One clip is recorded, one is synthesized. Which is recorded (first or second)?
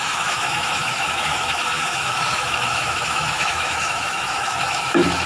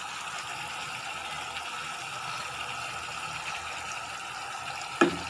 second